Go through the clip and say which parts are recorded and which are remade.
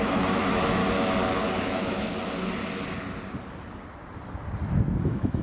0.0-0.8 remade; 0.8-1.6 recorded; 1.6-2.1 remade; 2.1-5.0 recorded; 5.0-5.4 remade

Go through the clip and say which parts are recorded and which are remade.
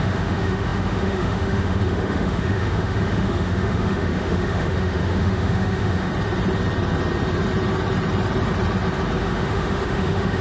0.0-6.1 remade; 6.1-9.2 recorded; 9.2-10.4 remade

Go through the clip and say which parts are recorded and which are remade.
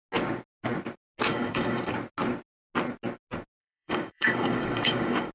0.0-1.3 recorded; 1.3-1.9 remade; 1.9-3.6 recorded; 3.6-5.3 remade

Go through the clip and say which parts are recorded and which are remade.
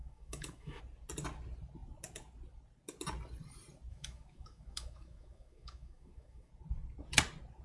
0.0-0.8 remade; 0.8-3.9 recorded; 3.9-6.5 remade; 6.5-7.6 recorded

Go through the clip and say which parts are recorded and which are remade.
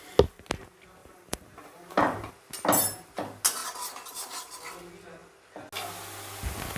0.0-1.0 recorded; 1.0-2.3 remade; 2.3-3.6 recorded; 3.6-4.6 remade; 4.6-6.8 recorded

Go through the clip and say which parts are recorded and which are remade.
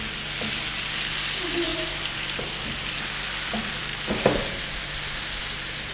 0.0-3.9 remade; 3.9-5.4 recorded; 5.4-5.9 remade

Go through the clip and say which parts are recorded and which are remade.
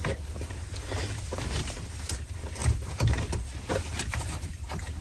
0.0-5.0 recorded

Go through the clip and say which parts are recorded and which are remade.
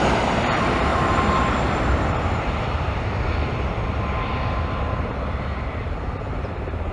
0.0-0.9 recorded; 0.9-2.1 remade; 2.1-6.9 recorded